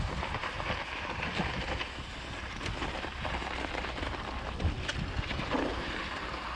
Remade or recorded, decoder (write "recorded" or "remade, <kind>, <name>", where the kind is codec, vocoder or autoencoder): recorded